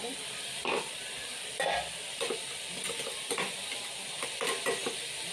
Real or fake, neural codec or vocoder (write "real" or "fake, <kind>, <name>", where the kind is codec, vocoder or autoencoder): real